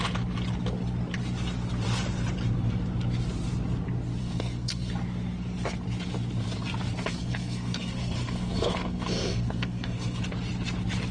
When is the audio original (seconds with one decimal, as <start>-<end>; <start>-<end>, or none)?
0.0-4.2; 4.9-7.1; 10.2-11.1